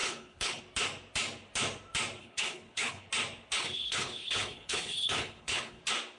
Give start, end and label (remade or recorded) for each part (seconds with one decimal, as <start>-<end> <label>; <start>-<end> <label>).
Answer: 0.0-0.6 remade; 0.6-2.2 recorded; 2.2-3.1 remade; 3.1-3.6 recorded; 3.6-5.8 remade; 5.8-6.2 recorded

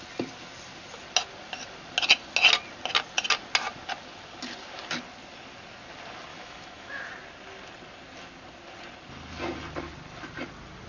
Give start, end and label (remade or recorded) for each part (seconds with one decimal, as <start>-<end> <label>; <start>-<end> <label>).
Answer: 0.0-6.3 recorded; 6.3-7.0 remade; 7.0-10.9 recorded

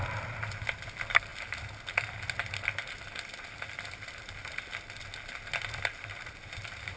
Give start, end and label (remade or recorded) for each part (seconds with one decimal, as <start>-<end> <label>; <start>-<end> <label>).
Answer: 0.0-7.0 recorded

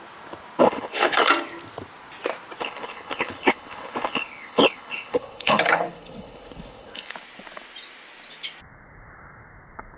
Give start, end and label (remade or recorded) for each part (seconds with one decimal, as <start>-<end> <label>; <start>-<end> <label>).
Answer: 0.0-0.6 recorded; 0.6-1.3 remade; 1.3-2.6 recorded; 2.6-7.1 remade; 7.1-10.0 recorded